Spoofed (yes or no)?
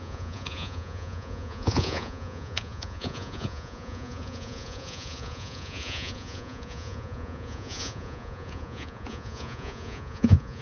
yes